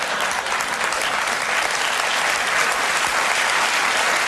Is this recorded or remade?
recorded